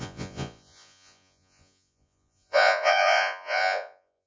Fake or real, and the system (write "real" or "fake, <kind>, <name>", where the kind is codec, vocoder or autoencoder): fake, vocoder, Vocos